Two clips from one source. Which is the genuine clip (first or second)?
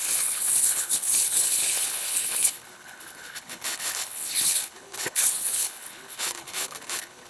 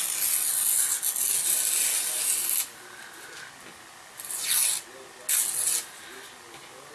second